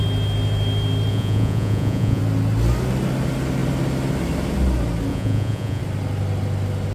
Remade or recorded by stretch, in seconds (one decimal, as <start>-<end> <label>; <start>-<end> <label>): 0.0-1.1 recorded; 1.1-2.2 remade; 2.2-5.1 recorded; 5.1-5.8 remade; 5.8-6.9 recorded

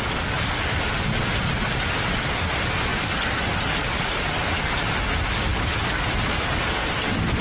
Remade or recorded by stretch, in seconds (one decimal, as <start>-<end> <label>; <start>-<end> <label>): 0.0-7.4 recorded

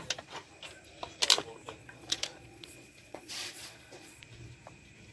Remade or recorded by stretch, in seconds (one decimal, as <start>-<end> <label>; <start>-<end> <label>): 0.0-1.8 recorded; 1.8-4.2 remade; 4.2-5.1 recorded